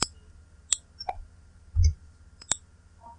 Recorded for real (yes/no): yes